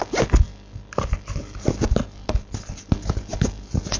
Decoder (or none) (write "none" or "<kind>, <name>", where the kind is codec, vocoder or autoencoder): none